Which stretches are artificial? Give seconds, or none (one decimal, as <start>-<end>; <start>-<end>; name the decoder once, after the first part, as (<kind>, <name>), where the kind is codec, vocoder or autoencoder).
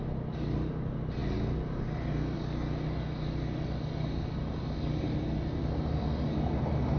none